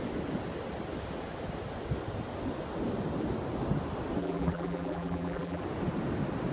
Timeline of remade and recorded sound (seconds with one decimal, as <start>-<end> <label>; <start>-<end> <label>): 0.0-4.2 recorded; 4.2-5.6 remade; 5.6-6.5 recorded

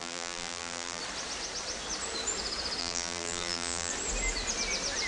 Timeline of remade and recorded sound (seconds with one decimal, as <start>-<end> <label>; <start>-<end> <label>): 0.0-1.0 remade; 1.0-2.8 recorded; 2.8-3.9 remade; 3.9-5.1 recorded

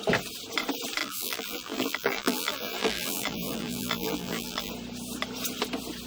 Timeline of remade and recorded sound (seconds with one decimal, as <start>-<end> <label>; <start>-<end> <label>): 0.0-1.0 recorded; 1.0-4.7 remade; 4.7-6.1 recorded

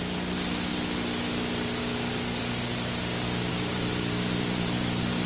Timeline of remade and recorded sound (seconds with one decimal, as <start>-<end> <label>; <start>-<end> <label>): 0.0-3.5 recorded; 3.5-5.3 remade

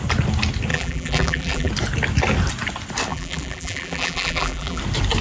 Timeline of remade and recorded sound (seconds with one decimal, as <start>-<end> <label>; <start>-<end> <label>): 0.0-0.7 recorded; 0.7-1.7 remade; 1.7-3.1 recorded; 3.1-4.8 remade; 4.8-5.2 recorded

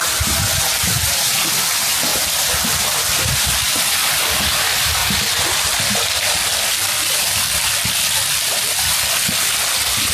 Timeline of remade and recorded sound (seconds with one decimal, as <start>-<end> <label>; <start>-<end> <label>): 0.0-2.1 remade; 2.1-3.1 recorded; 3.1-5.0 remade; 5.0-10.1 recorded

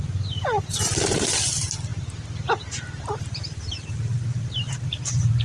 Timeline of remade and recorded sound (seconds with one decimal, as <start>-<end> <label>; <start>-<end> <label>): 0.0-5.4 recorded

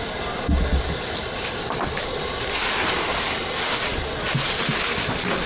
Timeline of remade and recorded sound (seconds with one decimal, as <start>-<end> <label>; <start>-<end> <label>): 0.0-0.7 recorded; 0.7-2.4 remade; 2.4-3.9 recorded; 3.9-5.1 remade; 5.1-5.5 recorded